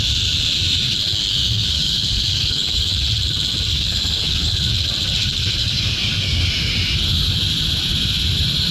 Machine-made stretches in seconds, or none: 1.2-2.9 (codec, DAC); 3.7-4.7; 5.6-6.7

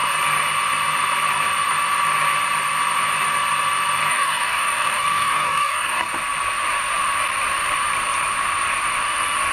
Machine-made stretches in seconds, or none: 4.1-6.1 (codec, DAC)

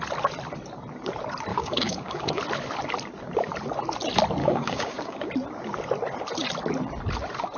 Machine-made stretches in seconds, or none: 1.5-2.4 (codec, DAC); 4.4-5.3

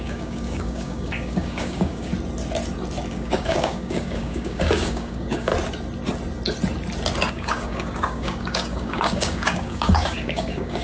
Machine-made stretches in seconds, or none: 0.0-2.1 (codec, DAC); 3.1-5.5; 7.3-10.8

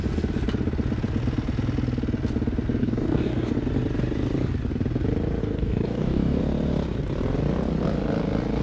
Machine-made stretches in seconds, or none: 2.8-3.5 (codec, DAC); 5.4-6.4

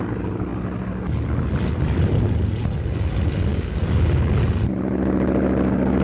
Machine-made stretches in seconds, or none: 3.5-4.3 (codec, DAC)